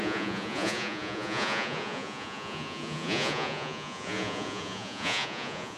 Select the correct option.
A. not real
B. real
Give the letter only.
A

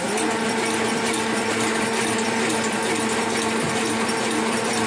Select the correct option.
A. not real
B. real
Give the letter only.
B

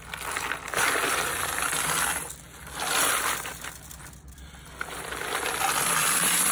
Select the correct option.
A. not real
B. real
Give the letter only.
B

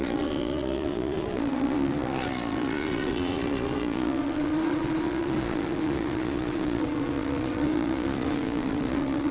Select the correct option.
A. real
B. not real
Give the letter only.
B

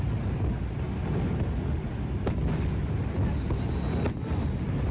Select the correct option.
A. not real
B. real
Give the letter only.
B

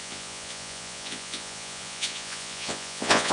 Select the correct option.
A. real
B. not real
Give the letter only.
B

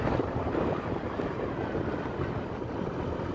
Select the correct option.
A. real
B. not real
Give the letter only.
A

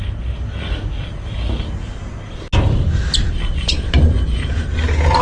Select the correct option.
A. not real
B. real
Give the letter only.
B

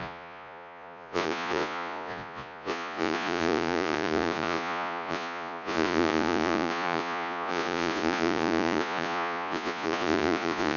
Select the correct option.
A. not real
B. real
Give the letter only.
A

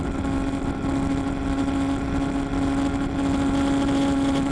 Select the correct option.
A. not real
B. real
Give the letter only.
B